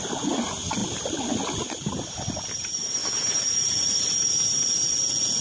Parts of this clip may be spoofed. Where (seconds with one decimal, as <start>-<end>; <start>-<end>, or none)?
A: 3.0-4.7